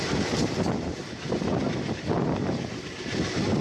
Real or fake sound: real